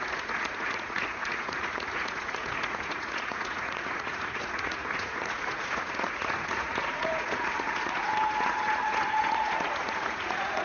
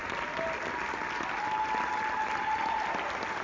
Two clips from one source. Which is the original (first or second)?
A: second